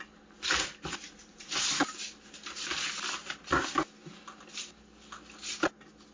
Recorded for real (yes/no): yes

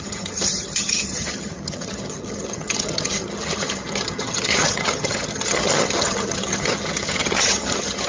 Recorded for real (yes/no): no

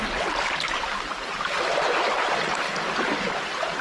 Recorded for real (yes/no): yes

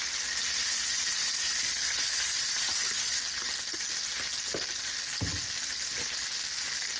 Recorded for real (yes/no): yes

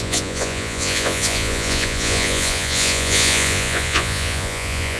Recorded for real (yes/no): no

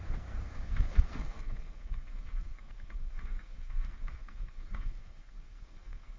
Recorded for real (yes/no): no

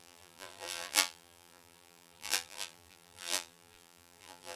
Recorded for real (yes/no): no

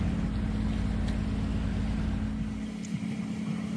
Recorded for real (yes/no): yes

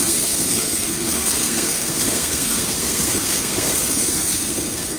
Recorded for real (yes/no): no